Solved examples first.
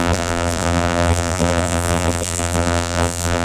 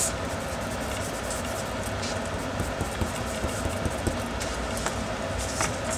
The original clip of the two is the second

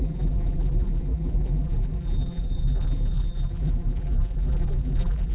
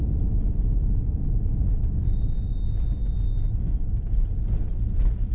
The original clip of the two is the second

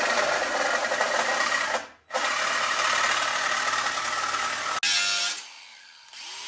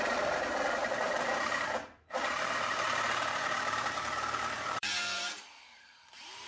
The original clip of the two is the first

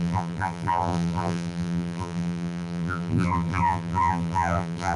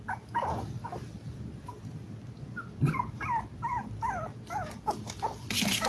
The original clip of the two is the second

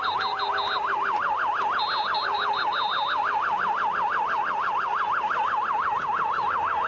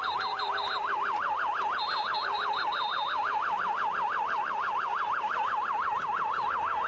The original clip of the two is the first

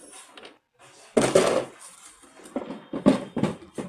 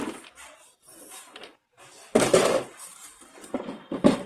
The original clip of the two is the first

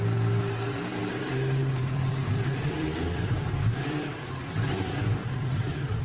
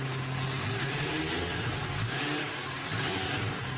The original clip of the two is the second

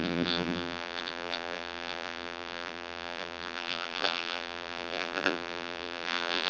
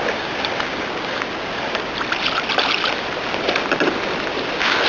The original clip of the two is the second